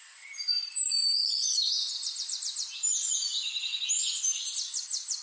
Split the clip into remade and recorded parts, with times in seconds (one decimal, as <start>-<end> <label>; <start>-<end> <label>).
0.0-2.5 remade; 2.5-5.2 recorded